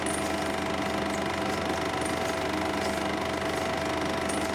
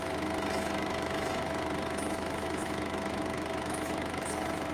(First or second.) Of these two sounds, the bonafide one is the first